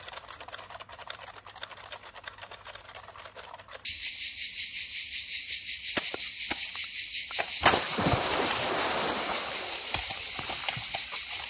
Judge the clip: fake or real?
real